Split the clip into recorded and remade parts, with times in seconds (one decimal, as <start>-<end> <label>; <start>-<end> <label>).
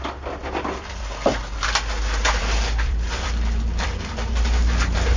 0.0-0.4 recorded; 0.4-1.0 remade; 1.0-2.4 recorded; 2.4-4.1 remade; 4.1-5.2 recorded